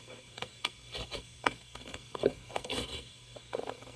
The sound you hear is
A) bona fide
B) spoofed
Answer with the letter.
B